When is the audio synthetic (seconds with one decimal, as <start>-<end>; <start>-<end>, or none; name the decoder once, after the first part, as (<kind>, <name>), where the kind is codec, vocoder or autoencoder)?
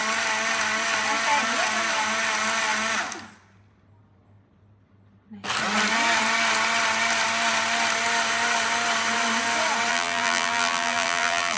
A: 9.9-11.6 (vocoder, BigVGAN v2)